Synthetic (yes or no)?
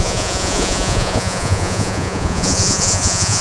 yes